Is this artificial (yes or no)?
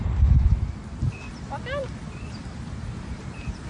no